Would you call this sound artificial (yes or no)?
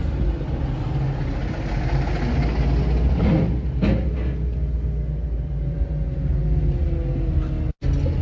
no